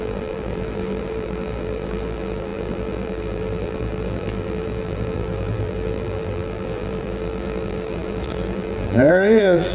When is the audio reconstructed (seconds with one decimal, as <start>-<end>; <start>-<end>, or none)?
0.0-9.7